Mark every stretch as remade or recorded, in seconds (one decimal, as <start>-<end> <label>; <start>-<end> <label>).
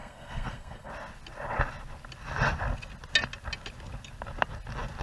0.0-0.9 remade; 0.9-5.0 recorded